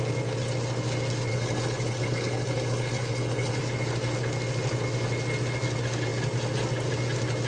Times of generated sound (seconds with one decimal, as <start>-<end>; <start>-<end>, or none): 1.3-3.6